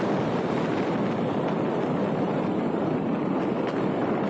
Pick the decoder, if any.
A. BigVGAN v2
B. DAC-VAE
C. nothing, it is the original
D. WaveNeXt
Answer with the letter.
C